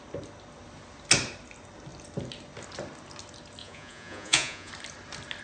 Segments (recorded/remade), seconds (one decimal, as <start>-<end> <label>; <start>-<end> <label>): 0.0-3.6 recorded; 3.6-4.7 remade; 4.7-5.4 recorded